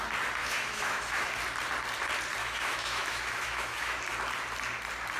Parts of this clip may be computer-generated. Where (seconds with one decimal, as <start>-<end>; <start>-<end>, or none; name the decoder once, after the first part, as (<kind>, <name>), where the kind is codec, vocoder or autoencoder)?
0.4-1.3 (autoencoder, DAC-VAE); 2.4-4.0